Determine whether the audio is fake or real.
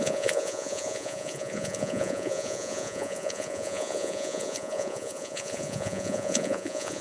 fake